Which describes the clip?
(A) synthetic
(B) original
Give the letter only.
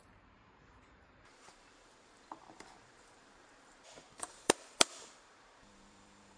A